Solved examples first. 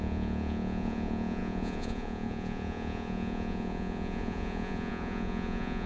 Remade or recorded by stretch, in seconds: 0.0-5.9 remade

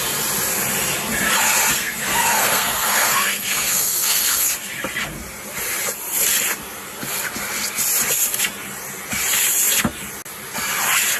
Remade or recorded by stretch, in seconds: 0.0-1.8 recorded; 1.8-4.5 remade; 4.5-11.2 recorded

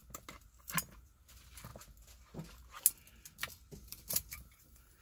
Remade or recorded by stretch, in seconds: 0.0-1.2 recorded; 1.2-1.7 remade; 1.7-4.1 recorded; 4.1-5.0 remade

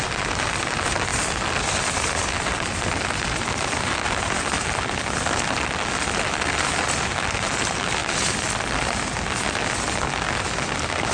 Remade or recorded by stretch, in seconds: 0.0-11.1 recorded

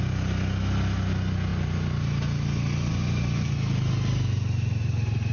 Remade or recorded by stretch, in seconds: 0.0-5.3 recorded

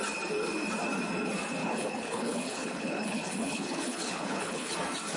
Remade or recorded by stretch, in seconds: 0.0-1.6 recorded; 1.6-4.7 remade; 4.7-5.2 recorded

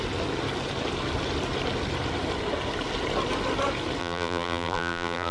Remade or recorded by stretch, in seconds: 0.0-4.0 recorded; 4.0-5.3 remade

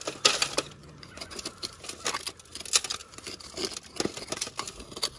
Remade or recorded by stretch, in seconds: 0.0-0.8 recorded; 0.8-1.4 remade; 1.4-5.2 recorded